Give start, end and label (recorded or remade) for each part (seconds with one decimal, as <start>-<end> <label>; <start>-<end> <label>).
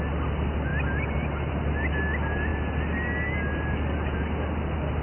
0.0-5.0 recorded